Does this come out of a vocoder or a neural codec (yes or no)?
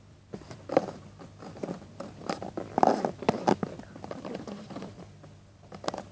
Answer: no